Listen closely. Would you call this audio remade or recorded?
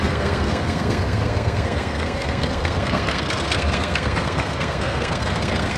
remade